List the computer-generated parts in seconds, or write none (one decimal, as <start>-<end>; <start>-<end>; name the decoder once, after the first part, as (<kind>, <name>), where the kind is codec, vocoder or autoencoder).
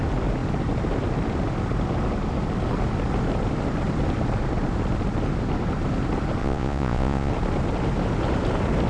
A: 6.4-7.3 (vocoder, Vocos)